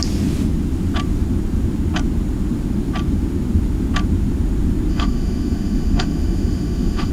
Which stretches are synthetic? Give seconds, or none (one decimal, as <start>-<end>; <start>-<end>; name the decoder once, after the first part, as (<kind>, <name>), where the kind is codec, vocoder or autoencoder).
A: 4.9-7.1 (autoencoder, DAC-VAE)